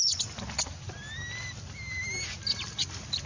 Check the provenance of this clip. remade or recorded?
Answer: recorded